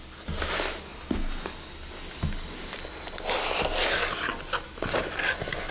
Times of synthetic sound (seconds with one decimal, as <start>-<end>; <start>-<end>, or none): none

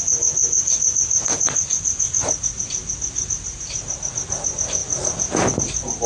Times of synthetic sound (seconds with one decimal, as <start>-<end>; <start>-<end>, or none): none

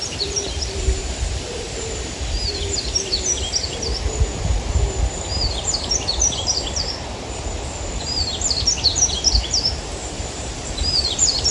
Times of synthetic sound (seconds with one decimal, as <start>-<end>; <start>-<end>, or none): 0.0-11.5

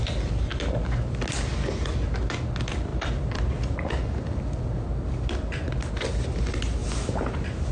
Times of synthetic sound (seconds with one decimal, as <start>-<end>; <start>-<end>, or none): 2.9-5.9; 6.8-7.7

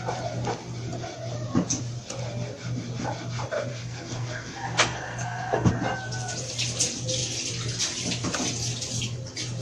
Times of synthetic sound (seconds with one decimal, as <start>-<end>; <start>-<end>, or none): 3.7-5.7

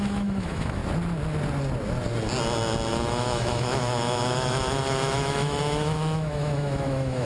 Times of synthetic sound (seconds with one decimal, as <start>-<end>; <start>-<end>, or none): 0.0-0.8; 2.9-7.3

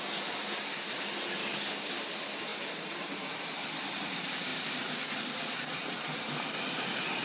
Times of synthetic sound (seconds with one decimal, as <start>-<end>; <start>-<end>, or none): 1.4-1.9